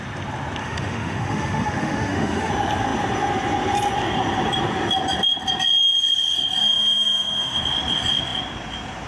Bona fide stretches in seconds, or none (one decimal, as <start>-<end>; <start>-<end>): 0.0-0.6; 2.5-6.6; 7.6-9.1